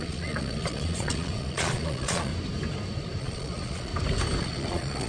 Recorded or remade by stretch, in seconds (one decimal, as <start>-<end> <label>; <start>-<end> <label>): 0.0-2.3 remade; 2.3-3.2 recorded; 3.2-3.9 remade; 3.9-4.4 recorded; 4.4-5.1 remade